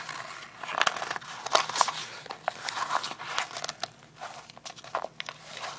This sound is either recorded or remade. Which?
recorded